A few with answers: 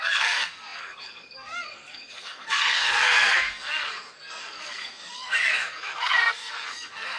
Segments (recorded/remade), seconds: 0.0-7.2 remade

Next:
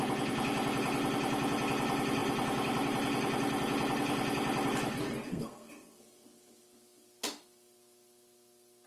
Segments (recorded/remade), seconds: 0.0-5.3 recorded; 5.3-6.0 remade; 6.0-8.9 recorded

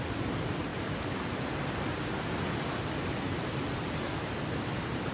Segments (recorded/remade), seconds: 0.0-5.1 recorded